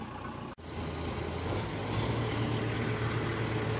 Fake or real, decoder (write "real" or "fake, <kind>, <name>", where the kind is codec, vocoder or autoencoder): real